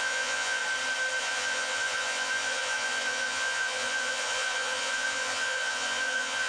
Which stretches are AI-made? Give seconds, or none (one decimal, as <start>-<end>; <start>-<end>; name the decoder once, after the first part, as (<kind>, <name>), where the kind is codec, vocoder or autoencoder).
0.0-0.6 (vocoder, Vocos); 1.2-6.5